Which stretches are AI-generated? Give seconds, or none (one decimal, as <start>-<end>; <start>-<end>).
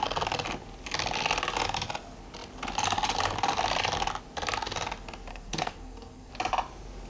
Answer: 5.3-6.3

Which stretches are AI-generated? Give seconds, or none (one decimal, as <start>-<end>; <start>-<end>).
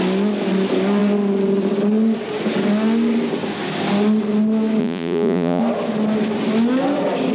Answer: 4.8-5.6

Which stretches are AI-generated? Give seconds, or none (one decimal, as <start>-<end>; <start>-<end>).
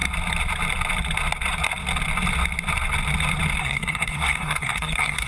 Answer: 3.6-5.3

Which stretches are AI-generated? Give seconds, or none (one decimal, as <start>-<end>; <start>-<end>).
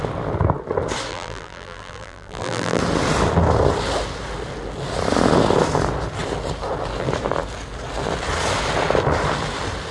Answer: 1.1-2.8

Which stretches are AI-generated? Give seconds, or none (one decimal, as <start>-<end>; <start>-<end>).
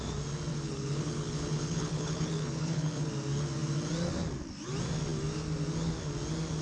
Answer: 0.5-3.1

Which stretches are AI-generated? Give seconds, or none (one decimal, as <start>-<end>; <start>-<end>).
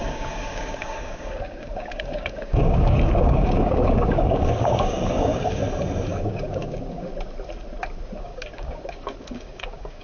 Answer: 0.0-5.6; 6.1-7.1; 8.2-10.0